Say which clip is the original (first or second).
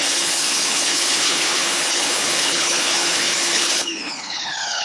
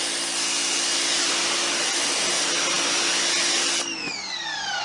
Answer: second